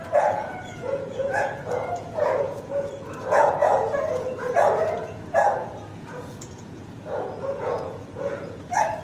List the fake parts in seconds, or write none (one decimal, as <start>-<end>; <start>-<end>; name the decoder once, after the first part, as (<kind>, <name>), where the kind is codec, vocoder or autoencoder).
0.0-9.0 (vocoder, Vocos)